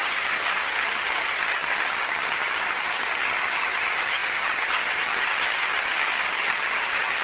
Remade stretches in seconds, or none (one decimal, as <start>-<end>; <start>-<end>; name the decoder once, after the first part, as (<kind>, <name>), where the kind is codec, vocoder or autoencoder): 0.0-7.2 (vocoder, HiFi-GAN)